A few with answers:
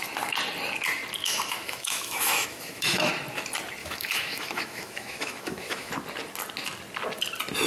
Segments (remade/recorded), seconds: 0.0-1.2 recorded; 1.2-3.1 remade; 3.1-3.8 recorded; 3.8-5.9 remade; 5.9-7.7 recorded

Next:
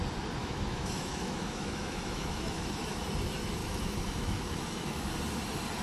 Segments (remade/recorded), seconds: 0.0-0.4 recorded; 0.4-3.0 remade; 3.0-3.6 recorded; 3.6-5.1 remade; 5.1-5.8 recorded

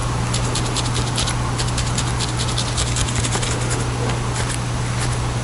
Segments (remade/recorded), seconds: 0.0-5.4 recorded

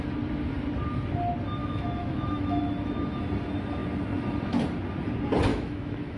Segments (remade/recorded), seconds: 0.0-1.6 recorded; 1.6-2.6 remade; 2.6-5.5 recorded; 5.5-6.2 remade

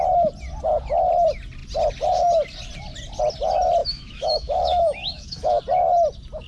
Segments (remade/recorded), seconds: 0.0-3.8 recorded; 3.8-5.6 remade; 5.6-6.5 recorded